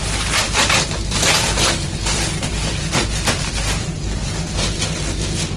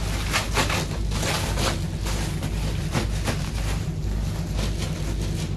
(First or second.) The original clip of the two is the second